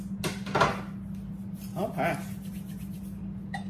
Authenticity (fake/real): real